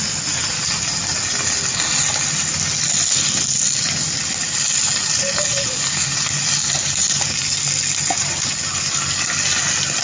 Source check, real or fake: real